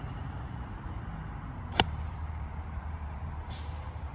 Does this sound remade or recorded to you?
remade